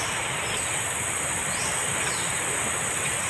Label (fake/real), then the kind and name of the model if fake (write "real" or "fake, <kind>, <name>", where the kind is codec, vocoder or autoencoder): real